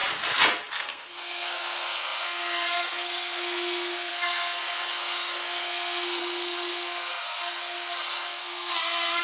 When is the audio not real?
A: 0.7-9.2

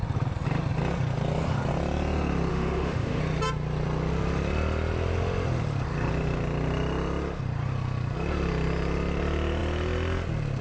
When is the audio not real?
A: 2.5-3.2

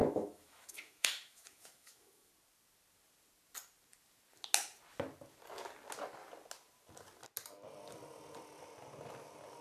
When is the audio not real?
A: 0.0-2.3